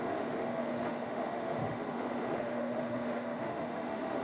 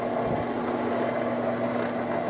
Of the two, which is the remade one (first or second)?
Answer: first